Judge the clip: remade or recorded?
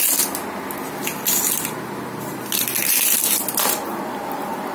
recorded